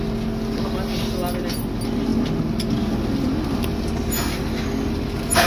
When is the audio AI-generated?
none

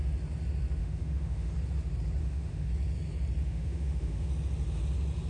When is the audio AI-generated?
0.8-1.5; 2.2-2.7; 3.4-4.3